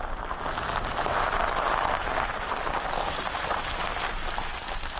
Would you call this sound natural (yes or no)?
yes